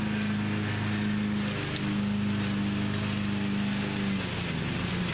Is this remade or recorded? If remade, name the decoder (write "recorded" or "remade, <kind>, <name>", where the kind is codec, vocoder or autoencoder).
recorded